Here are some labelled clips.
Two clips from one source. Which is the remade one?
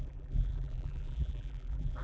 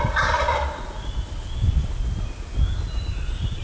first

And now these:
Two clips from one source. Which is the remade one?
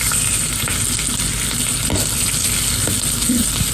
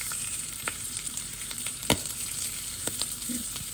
second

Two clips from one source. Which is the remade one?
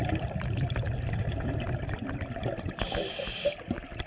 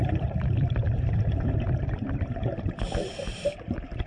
second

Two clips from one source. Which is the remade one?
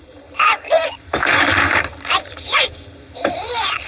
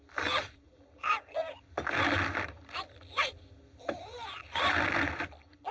first